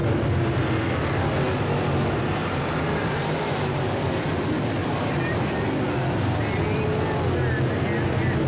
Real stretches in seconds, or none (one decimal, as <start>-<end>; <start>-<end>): 0.0-2.4; 4.3-4.8; 5.4-8.5